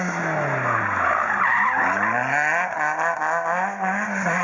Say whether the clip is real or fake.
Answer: real